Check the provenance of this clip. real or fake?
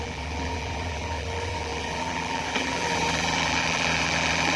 fake